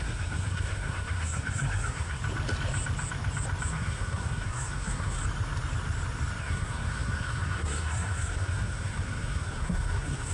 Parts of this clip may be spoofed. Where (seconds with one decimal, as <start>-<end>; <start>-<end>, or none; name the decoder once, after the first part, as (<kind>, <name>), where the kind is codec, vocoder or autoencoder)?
0.0-2.2 (codec, SNAC); 3.7-5.2; 6.4-10.3